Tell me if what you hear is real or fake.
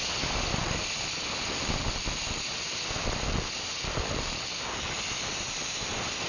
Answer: real